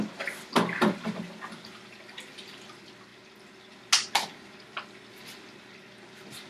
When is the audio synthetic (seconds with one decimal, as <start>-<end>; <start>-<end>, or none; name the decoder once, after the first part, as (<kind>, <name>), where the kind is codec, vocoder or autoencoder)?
none